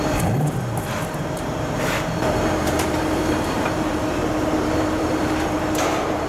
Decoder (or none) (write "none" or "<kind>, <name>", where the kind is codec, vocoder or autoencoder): vocoder, BigVGAN v2